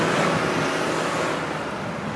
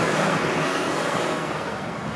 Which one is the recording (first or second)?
first